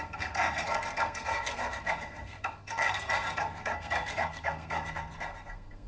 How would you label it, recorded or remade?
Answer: remade